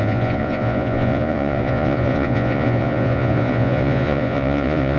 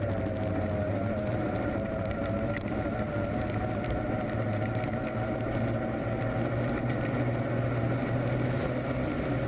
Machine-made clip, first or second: first